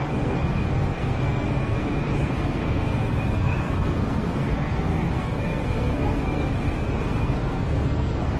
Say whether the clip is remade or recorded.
remade